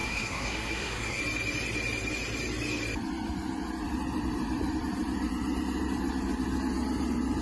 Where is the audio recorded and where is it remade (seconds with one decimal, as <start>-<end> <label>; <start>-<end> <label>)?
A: 0.0-1.2 remade; 1.2-7.4 recorded